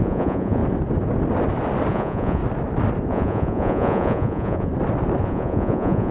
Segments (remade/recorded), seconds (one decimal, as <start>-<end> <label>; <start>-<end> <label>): 0.0-0.6 remade; 0.6-1.9 recorded; 1.9-2.4 remade; 2.4-3.1 recorded; 3.1-4.7 remade; 4.7-5.2 recorded; 5.2-6.1 remade